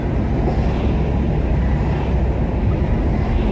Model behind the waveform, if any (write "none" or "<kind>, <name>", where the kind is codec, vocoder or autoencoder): none